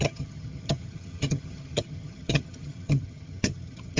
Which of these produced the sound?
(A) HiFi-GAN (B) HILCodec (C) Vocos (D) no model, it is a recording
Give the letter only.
A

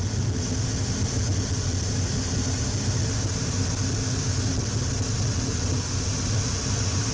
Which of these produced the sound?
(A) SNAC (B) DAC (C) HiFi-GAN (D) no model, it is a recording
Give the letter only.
D